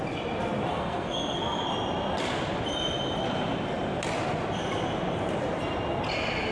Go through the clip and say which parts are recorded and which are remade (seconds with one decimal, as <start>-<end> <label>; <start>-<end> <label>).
0.0-0.7 recorded; 0.7-1.4 remade; 1.4-6.5 recorded

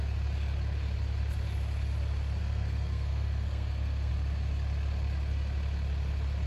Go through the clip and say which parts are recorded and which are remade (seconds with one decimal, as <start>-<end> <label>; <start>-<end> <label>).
0.0-2.4 recorded; 2.4-4.1 remade; 4.1-6.5 recorded